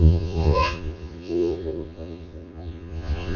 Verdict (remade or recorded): remade